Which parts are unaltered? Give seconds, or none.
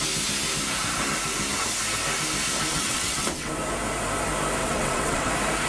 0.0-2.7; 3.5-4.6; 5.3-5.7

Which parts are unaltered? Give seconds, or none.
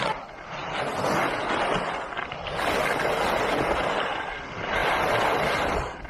0.0-6.1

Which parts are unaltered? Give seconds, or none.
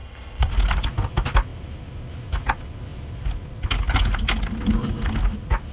0.5-5.7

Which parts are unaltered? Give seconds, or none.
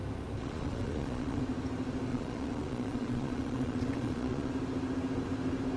0.0-0.4; 1.4-2.1; 4.5-5.8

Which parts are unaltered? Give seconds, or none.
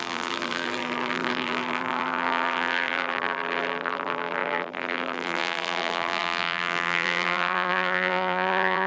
none